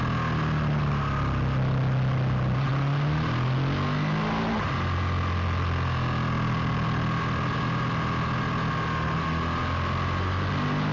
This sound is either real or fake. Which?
real